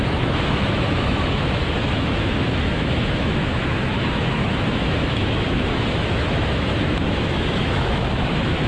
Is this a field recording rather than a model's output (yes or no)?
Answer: no